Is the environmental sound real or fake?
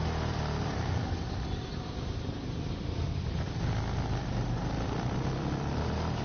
fake